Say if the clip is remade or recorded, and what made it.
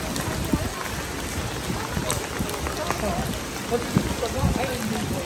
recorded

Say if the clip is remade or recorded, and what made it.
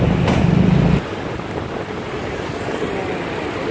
recorded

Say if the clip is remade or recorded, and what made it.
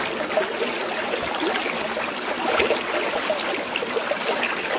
recorded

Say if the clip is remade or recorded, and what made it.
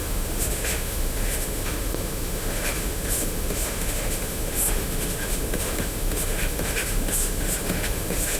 remade, autoencoder, DAC-VAE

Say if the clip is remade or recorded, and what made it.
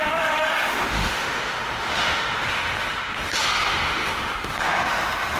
remade, autoencoder, DAC-VAE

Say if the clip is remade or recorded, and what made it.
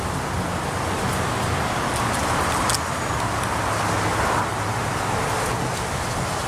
recorded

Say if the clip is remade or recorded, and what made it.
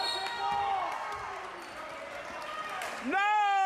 recorded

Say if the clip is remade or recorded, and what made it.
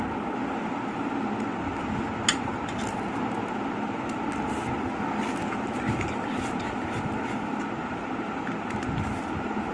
recorded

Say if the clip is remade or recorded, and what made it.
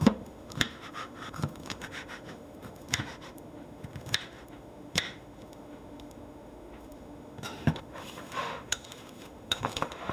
remade, autoencoder, DAC-VAE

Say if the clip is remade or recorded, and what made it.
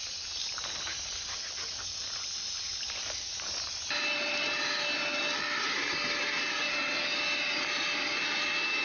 recorded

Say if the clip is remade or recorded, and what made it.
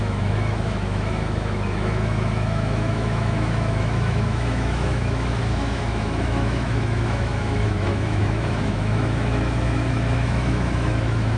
remade, autoencoder, DAC-VAE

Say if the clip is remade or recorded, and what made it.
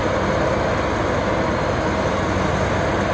recorded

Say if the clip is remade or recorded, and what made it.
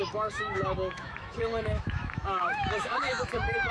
remade, autoencoder, DAC-VAE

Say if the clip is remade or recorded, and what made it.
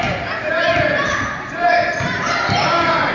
recorded